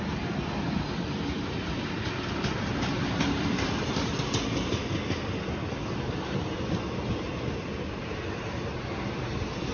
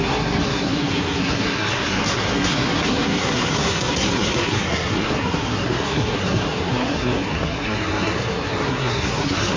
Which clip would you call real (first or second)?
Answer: first